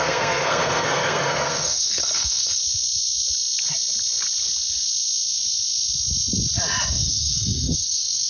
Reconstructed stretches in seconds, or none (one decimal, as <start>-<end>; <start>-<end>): 0.0-2.6; 6.9-8.3